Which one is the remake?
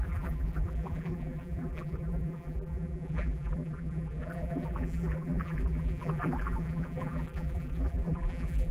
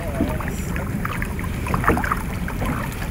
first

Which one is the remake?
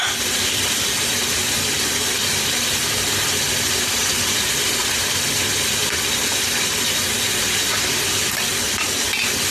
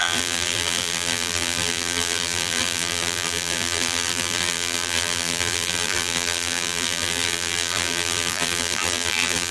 second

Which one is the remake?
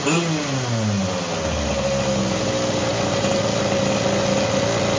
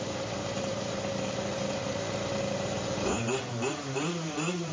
second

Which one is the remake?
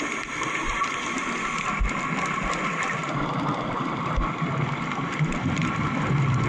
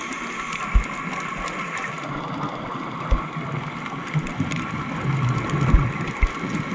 first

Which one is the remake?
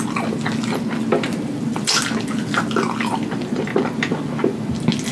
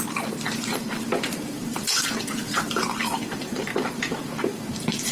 second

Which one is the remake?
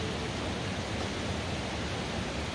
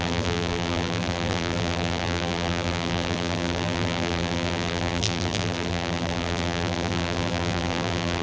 second